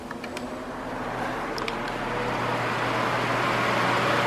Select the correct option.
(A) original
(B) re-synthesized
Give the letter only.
A